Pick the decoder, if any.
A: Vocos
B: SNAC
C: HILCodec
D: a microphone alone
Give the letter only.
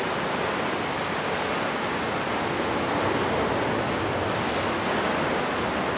D